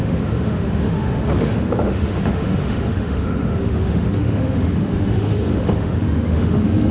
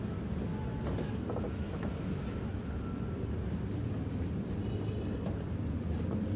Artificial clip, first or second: first